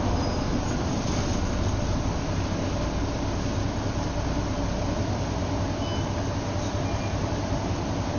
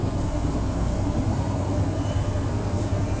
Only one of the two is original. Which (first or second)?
first